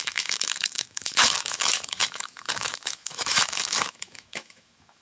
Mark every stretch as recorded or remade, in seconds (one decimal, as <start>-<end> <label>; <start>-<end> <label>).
0.0-5.0 remade